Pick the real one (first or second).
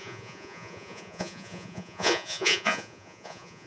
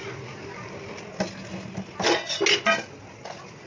second